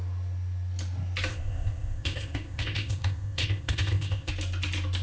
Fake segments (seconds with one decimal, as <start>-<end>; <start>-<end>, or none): 1.3-4.3